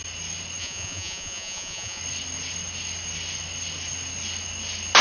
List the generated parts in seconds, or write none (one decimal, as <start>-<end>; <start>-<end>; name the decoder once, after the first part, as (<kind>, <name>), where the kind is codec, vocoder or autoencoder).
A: 0.6-2.0 (vocoder, Vocos)